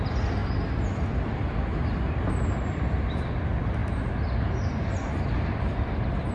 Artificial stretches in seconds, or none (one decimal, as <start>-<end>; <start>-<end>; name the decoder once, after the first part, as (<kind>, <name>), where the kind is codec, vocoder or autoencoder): none